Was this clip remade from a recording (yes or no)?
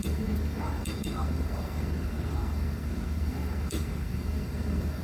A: yes